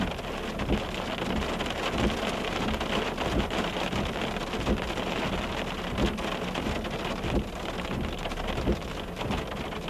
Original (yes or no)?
yes